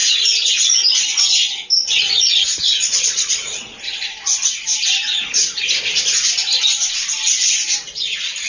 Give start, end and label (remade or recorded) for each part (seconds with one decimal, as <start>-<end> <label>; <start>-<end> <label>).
0.0-1.8 recorded; 1.8-3.8 remade; 3.8-8.5 recorded